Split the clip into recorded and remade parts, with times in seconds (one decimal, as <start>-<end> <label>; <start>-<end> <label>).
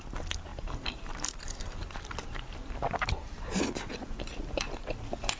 0.0-0.5 recorded; 0.5-3.7 remade; 3.7-5.4 recorded